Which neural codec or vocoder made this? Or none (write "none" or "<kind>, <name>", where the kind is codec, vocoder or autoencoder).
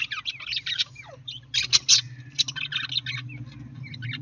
none